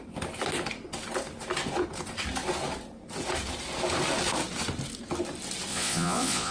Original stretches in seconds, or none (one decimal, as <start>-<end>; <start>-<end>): 0.0-5.7